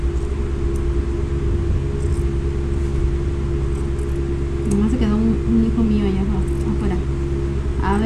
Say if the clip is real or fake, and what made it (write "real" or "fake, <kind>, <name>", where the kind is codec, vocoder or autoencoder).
real